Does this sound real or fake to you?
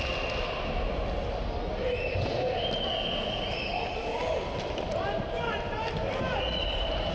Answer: real